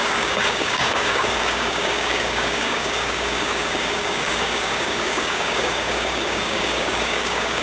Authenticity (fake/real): fake